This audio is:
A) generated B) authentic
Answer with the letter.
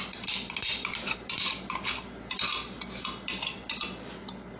B